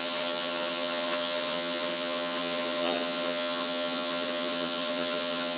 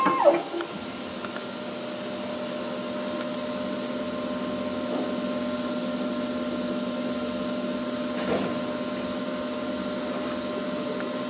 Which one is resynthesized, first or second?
first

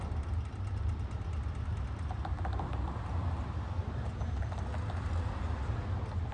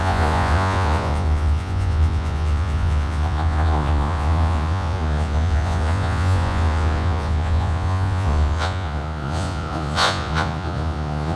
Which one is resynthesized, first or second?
second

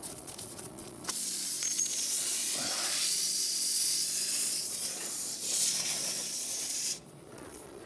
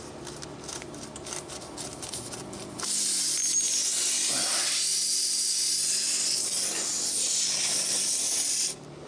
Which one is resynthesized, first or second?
first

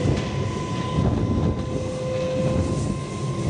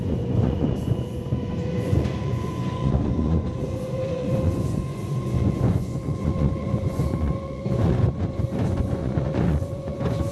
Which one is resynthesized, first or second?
second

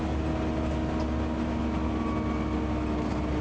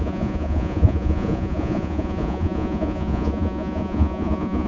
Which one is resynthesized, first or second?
second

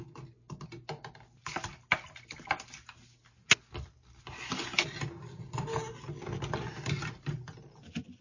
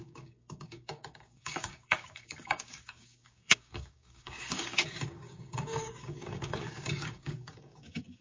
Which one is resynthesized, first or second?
second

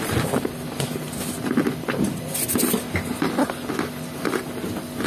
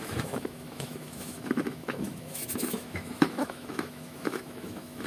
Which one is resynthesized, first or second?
second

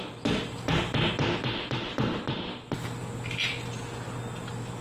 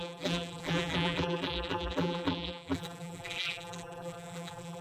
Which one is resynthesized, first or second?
second